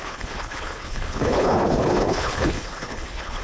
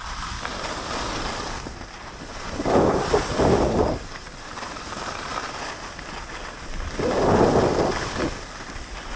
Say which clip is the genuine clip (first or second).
second